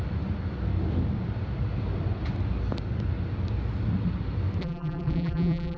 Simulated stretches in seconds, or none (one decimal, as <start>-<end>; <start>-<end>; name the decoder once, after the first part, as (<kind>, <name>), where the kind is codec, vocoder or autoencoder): 4.6-5.8 (vocoder, BigVGAN v2)